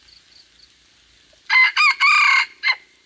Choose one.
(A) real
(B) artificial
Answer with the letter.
A